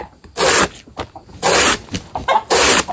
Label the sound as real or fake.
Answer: real